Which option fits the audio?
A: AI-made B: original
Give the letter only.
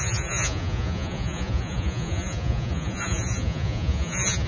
A